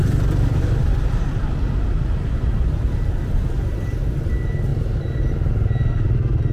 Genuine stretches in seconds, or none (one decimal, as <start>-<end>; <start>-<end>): 0.0-6.5